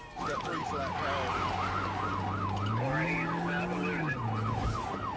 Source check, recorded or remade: recorded